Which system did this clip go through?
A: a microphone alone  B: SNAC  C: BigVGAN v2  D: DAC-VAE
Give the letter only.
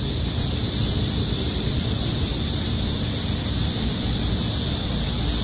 A